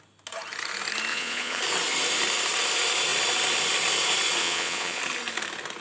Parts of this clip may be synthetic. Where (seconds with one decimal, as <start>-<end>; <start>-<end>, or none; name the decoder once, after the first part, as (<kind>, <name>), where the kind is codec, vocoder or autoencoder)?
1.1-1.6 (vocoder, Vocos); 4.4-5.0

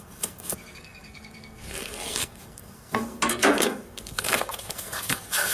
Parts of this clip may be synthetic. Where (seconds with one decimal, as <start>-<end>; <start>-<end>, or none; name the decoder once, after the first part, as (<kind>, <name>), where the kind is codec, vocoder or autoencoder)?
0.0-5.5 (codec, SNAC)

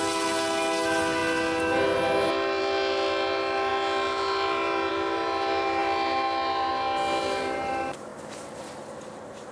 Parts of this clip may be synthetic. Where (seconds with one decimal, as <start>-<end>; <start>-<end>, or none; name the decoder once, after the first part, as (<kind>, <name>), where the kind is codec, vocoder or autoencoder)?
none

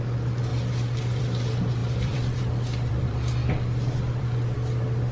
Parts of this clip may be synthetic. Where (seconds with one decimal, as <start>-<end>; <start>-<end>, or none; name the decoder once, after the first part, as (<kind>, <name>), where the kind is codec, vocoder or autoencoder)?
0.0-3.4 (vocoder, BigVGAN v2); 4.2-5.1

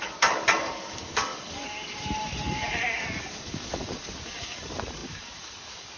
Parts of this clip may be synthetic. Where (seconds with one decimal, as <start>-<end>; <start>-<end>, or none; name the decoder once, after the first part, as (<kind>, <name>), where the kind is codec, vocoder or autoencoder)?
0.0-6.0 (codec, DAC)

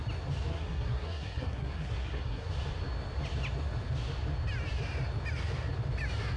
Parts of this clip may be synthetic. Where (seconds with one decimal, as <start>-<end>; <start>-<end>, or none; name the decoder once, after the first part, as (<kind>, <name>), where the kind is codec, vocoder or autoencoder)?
0.5-2.5 (codec, SNAC)